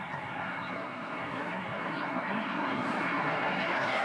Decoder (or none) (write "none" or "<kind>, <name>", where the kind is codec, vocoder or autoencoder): codec, SNAC